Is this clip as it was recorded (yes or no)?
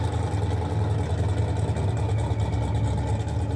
yes